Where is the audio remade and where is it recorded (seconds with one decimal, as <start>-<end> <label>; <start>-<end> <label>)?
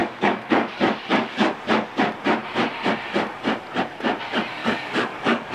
0.0-1.5 remade; 1.5-4.6 recorded; 4.6-5.5 remade